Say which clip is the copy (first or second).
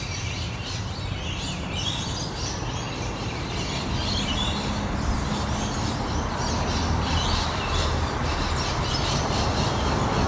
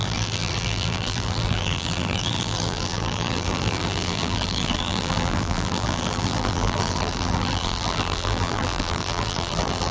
second